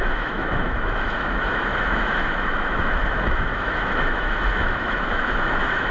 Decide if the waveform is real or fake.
fake